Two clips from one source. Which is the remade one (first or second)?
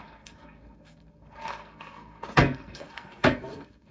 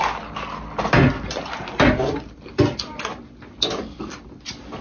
first